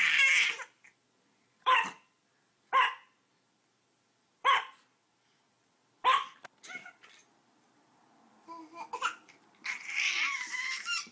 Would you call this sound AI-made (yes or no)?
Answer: yes